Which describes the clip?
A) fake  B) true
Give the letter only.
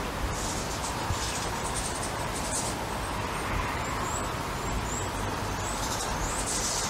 B